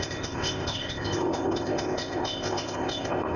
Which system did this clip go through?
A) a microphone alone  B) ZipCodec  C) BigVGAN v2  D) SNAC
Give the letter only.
B